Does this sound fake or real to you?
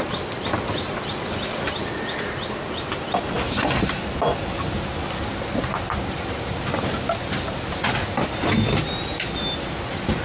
real